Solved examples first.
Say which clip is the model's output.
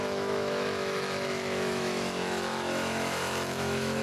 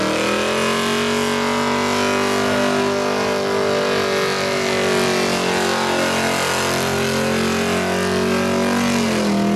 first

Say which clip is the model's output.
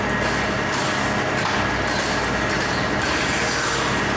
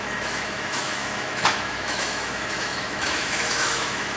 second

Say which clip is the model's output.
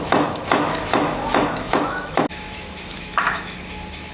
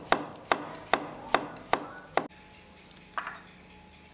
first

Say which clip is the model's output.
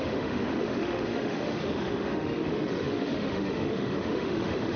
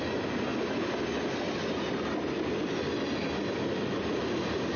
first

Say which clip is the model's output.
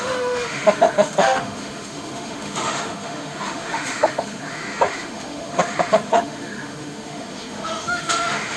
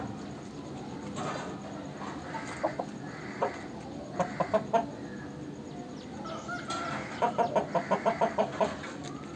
first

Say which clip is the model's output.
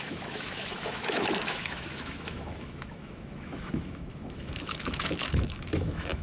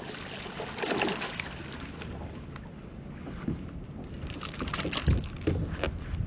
first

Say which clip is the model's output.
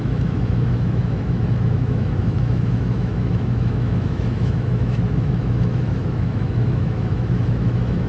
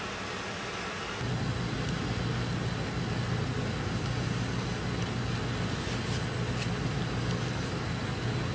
first